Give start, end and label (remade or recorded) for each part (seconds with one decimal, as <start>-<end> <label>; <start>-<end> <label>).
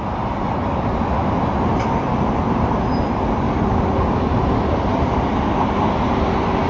0.0-6.7 recorded